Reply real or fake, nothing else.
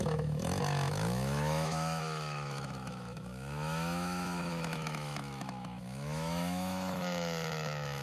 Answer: fake